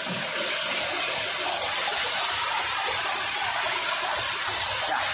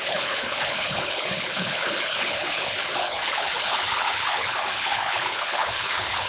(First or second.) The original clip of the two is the first